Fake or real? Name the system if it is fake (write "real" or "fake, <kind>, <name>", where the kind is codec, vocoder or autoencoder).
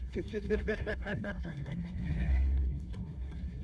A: fake, codec, SNAC